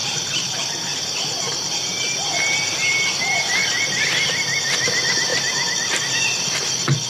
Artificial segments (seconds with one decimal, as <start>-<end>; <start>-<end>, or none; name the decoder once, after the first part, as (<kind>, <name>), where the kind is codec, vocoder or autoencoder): 0.0-4.3 (vocoder, BigVGAN v2); 5.3-6.0